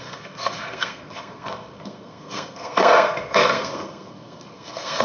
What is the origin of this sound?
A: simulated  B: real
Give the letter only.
A